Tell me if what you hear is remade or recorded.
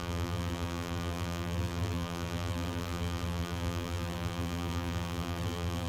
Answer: remade